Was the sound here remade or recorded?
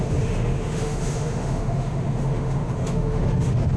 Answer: remade